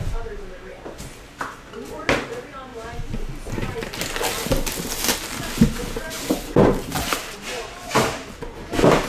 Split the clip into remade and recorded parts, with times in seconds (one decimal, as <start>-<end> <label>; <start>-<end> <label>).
0.0-5.8 recorded; 5.8-8.2 remade; 8.2-9.1 recorded